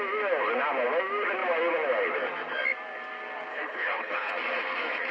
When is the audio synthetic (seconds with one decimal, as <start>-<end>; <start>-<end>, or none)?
3.5-4.3

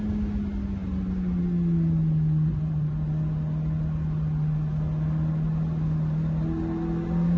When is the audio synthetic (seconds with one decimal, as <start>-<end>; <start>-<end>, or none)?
none

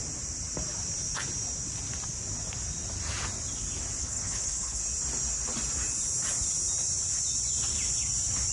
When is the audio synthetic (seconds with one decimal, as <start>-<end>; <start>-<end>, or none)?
4.0-4.8

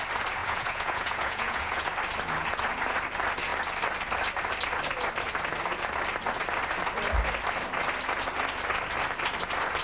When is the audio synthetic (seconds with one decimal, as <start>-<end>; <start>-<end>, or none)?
0.4-1.9

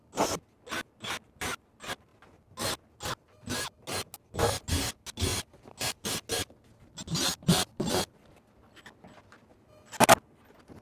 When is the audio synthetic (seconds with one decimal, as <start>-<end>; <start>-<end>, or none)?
none

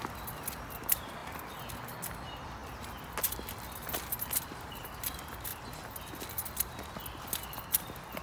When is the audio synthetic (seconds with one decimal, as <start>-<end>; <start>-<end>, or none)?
none